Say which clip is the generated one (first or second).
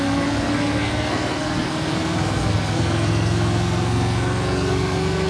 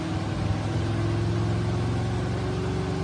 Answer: first